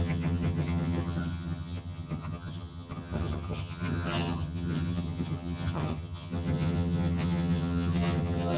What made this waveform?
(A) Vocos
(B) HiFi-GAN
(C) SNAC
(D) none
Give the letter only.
B